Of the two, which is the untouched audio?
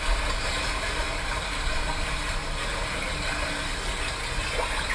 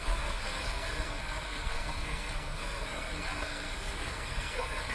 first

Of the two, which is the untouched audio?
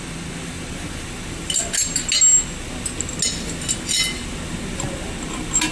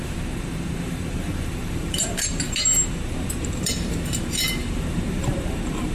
first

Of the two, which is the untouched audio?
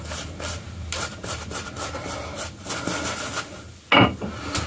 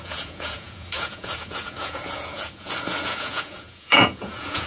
first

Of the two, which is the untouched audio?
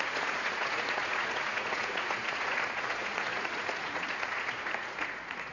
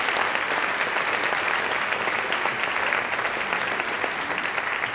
second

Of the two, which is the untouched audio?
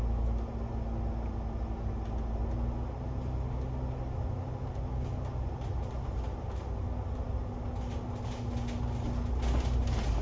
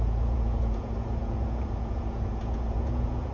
first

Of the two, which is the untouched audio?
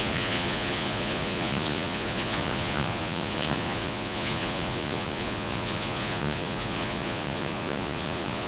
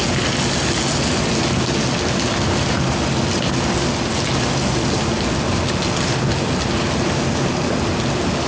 second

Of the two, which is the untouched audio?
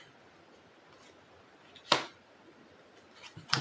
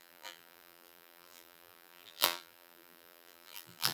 first